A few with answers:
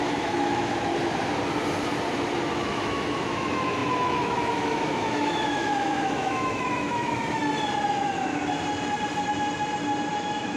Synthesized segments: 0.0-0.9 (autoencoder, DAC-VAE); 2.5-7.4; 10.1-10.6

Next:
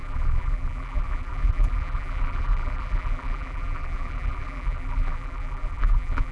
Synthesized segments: 0.0-6.3 (vocoder, BigVGAN v2)

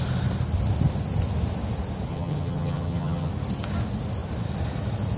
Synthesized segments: 2.1-3.3 (vocoder, HiFi-GAN)

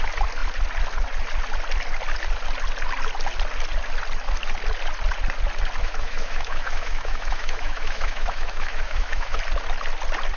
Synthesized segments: 5.8-9.4 (autoencoder, DAC-VAE)

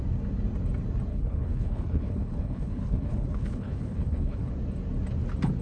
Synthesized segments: 1.1-4.5 (codec, HILCodec)

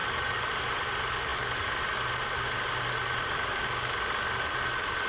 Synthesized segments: none

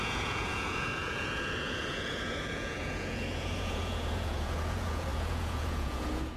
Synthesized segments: 0.0-6.4 (vocoder, Vocos)